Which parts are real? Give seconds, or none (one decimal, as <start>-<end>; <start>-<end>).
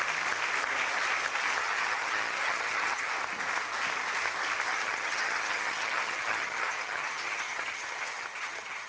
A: 0.0-1.6; 3.1-4.7